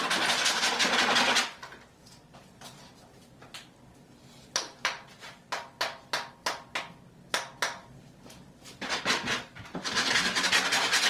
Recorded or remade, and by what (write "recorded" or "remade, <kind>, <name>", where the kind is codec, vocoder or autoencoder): recorded